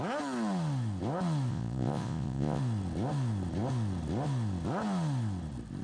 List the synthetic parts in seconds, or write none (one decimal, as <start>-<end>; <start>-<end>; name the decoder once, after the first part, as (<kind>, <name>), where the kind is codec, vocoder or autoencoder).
1.5-2.6 (vocoder, Vocos)